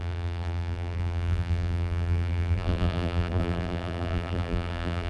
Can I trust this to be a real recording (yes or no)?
no